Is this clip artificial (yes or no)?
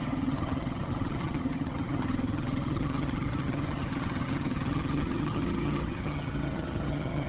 yes